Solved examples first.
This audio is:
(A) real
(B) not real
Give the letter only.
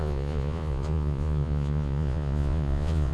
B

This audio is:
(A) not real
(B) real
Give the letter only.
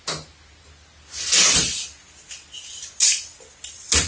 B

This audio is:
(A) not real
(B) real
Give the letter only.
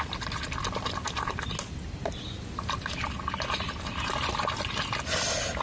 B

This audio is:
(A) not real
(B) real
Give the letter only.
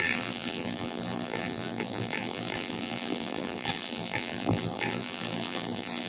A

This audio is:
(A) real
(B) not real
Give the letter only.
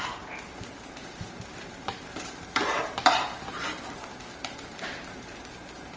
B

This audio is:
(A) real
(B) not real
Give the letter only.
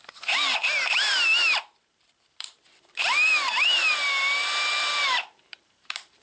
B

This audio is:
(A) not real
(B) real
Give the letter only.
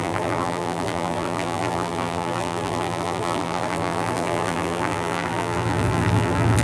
A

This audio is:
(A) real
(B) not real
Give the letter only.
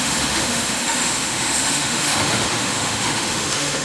B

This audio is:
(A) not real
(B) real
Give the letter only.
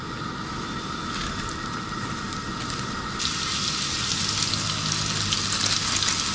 B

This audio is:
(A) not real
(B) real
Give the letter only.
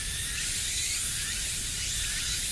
B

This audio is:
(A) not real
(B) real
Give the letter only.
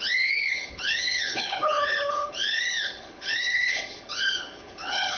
A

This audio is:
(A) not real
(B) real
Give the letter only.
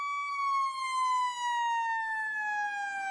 B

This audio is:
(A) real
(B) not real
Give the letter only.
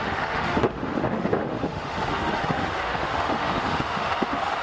B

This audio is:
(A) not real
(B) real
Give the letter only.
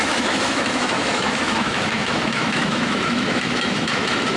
A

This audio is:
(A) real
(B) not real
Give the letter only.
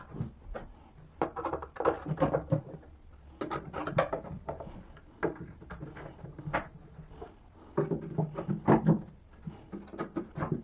A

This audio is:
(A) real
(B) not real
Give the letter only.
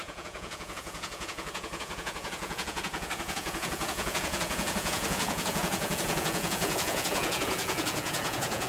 B